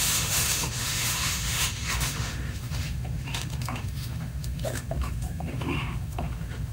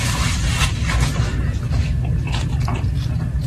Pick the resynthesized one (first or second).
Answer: first